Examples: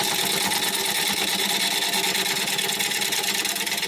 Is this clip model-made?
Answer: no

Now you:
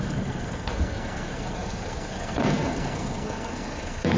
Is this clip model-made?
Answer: yes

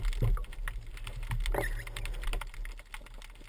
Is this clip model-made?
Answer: no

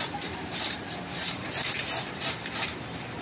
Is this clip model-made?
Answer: yes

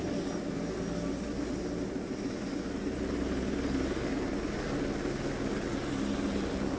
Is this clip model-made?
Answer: no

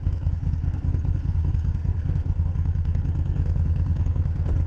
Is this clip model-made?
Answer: yes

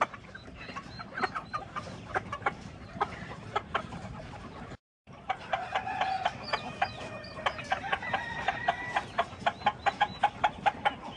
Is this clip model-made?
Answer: yes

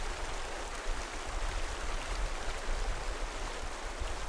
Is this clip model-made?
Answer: no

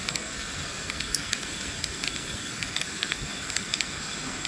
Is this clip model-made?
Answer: yes